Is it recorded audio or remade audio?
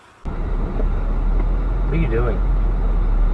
recorded